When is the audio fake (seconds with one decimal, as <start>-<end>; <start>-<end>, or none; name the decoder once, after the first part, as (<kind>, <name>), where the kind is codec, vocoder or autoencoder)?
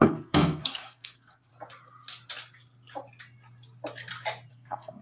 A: 0.0-1.5 (codec, SNAC); 4.5-5.0